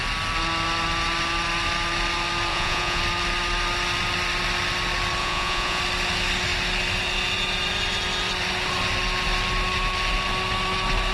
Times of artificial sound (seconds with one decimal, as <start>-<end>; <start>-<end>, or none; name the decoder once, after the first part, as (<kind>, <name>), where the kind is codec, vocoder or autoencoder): 2.5-3.0 (vocoder, Vocos); 5.2-5.8